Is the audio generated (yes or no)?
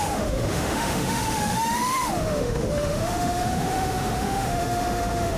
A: yes